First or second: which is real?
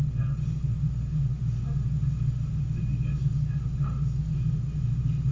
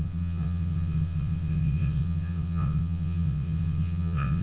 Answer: first